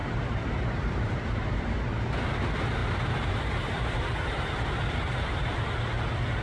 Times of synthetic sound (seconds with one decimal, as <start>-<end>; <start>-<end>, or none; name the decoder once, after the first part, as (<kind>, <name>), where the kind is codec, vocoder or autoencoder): 0.0-1.6 (vocoder, BigVGAN v2); 2.8-5.8